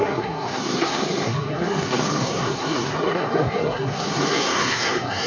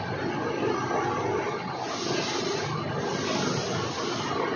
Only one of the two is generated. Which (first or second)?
first